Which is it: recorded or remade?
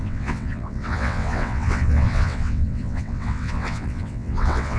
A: remade